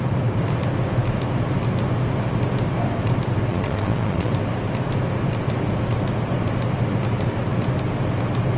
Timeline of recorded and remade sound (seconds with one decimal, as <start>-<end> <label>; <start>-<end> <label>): 0.0-3.5 recorded; 3.5-4.3 remade; 4.3-8.6 recorded